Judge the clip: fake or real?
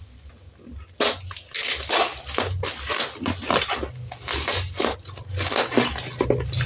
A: real